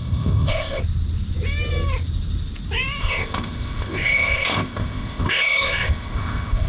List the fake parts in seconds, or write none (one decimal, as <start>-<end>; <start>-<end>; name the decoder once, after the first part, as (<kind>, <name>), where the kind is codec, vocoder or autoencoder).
0.0-0.8 (codec, ZipCodec); 3.0-6.7

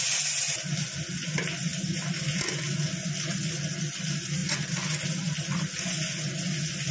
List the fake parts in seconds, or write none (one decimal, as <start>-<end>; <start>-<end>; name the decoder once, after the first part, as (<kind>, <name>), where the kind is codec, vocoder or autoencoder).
none

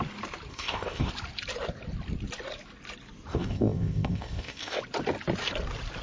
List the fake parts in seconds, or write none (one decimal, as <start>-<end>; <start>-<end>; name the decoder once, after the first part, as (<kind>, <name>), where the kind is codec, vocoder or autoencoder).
0.5-1.1 (codec, ZipCodec); 3.3-4.8

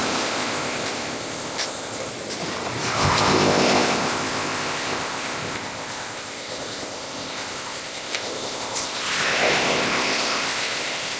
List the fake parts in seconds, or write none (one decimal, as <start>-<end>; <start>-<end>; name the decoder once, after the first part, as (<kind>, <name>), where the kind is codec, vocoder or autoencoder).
0.0-2.1 (codec, ZipCodec); 2.9-11.2

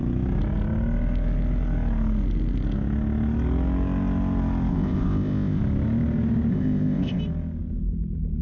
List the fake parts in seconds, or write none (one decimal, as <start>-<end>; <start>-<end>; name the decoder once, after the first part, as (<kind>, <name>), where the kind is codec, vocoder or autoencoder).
4.7-5.6 (codec, ZipCodec); 6.5-7.2